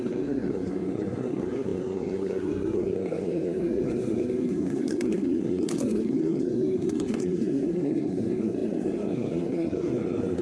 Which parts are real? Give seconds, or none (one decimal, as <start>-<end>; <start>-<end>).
none